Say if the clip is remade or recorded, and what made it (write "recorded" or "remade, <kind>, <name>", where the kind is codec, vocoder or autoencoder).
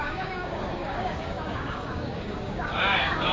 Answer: remade, codec, DAC